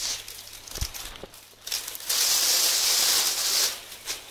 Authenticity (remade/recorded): recorded